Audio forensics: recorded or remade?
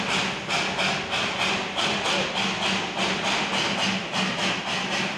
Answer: recorded